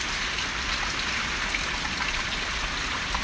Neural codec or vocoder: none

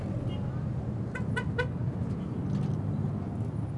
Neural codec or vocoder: none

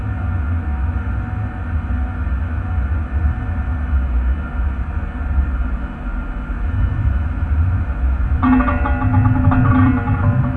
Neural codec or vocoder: none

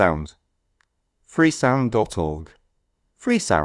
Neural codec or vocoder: codec, SNAC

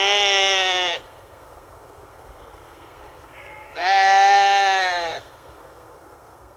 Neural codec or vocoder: codec, SNAC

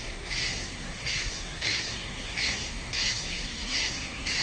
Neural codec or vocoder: codec, SNAC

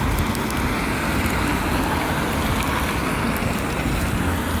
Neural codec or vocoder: none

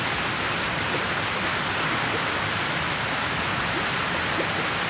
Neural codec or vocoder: none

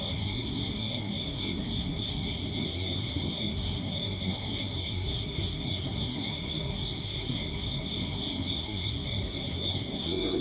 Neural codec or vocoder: codec, SNAC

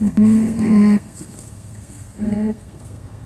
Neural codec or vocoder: codec, SNAC